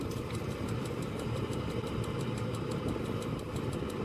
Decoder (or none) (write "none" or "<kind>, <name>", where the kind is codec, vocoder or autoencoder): none